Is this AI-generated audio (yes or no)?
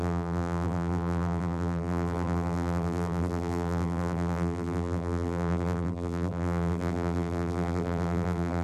yes